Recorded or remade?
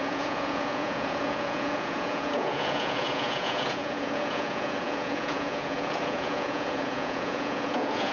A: remade